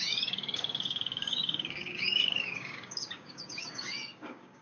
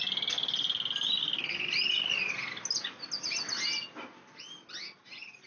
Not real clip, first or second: first